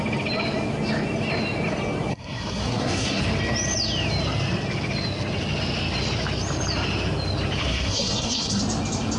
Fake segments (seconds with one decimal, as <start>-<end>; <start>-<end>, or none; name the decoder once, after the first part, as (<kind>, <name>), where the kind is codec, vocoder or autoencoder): 2.1-3.2 (codec, SNAC); 7.6-8.6